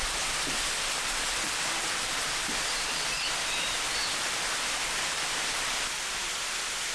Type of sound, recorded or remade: remade